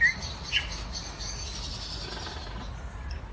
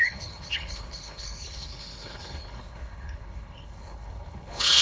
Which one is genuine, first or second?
first